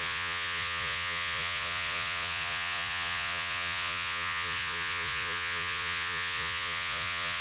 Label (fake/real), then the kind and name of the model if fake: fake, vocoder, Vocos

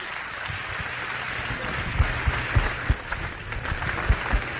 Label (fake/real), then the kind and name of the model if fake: real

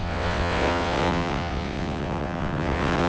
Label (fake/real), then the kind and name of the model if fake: fake, vocoder, WaveNeXt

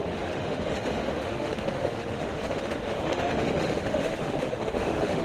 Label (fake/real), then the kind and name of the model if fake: fake, autoencoder, DAC-VAE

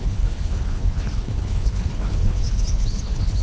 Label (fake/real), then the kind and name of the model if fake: fake, codec, HILCodec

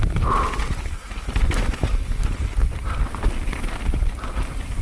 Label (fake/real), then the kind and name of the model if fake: fake, vocoder, BigVGAN v2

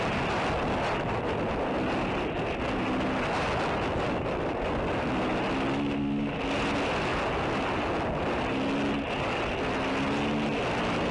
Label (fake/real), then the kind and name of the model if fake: real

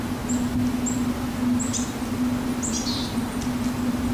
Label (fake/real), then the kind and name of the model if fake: real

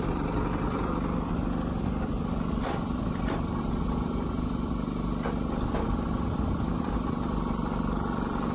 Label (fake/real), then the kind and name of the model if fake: fake, vocoder, BigVGAN v2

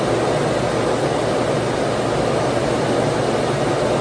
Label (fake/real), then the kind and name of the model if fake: real